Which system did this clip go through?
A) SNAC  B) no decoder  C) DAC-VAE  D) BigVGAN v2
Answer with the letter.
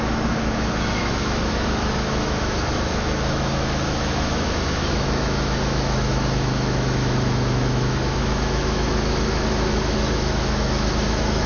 C